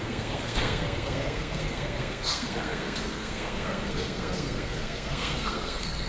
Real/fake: fake